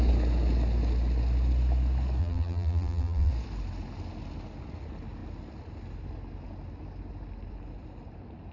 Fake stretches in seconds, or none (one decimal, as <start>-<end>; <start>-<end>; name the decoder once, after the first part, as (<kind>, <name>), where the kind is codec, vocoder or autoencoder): 2.2-3.3 (vocoder, BigVGAN v2)